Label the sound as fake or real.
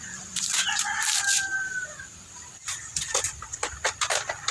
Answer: real